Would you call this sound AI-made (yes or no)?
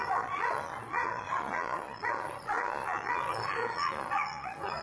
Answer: yes